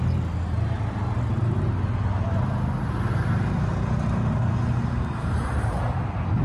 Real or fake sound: real